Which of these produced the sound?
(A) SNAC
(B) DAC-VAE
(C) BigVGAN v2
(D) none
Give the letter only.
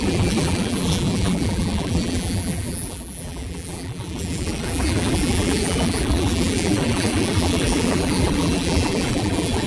C